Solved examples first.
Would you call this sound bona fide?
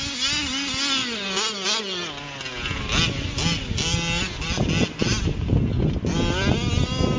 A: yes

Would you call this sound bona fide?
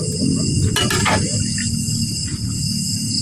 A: yes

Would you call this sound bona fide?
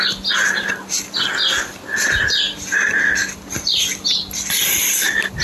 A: yes